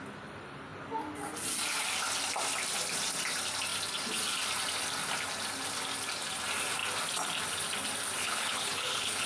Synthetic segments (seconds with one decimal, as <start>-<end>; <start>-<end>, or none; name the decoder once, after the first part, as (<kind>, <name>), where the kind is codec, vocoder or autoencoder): 8.2-9.3 (codec, HILCodec)